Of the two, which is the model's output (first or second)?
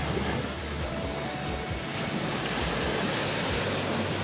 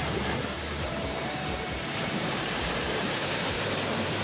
second